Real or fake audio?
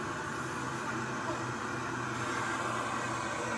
real